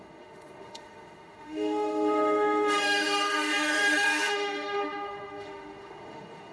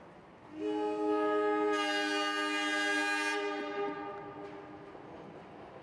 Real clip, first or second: second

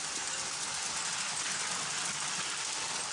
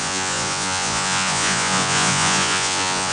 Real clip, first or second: first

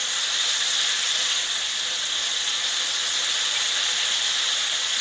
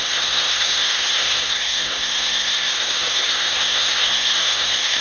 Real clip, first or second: first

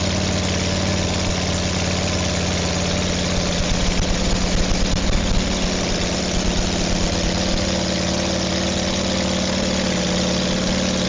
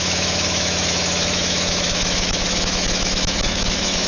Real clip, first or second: first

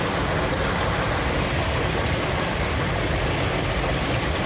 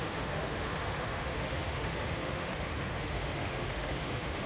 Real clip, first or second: first